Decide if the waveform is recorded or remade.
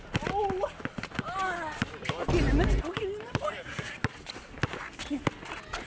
recorded